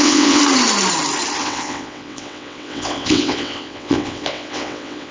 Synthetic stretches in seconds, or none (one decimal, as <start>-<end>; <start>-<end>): 0.0-0.4; 1.4-5.1